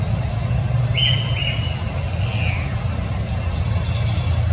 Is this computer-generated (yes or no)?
no